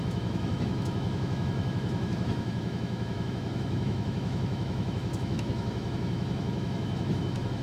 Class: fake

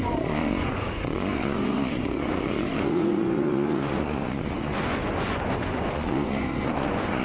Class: fake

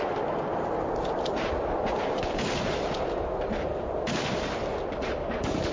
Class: real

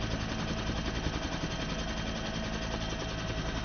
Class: real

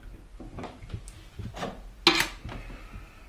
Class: real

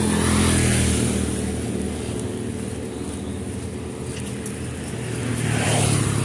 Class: real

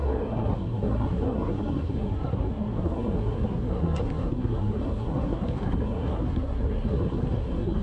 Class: fake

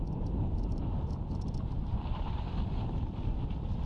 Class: real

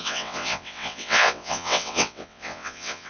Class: fake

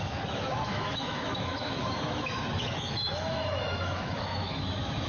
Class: fake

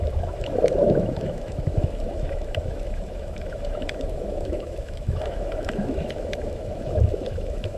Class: fake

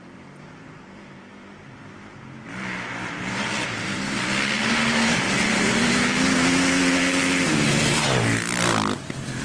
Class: real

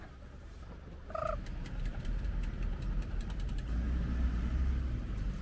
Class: fake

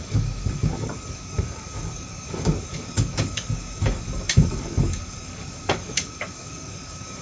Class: fake